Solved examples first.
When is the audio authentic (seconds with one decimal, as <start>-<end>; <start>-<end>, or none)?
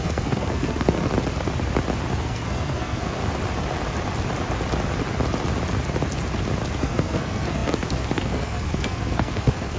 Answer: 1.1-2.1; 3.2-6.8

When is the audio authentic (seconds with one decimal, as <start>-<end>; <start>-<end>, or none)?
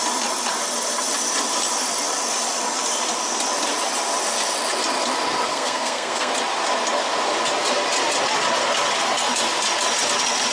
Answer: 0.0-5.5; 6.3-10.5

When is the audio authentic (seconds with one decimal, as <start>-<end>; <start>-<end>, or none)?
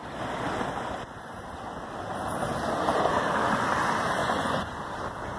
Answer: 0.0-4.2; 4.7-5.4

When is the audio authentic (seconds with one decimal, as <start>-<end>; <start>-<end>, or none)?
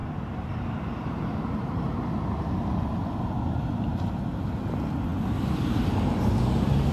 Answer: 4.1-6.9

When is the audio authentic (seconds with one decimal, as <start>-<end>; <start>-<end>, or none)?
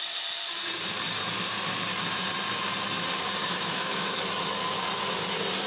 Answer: 0.0-3.4; 4.2-5.7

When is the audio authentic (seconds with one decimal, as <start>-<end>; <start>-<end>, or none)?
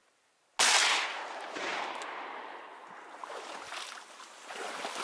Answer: 0.0-5.0